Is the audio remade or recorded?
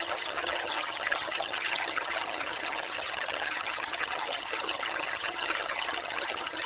remade